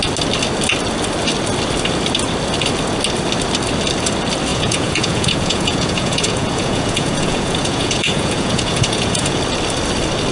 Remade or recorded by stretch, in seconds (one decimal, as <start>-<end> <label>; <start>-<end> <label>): 0.0-4.5 recorded; 4.5-9.4 remade; 9.4-10.3 recorded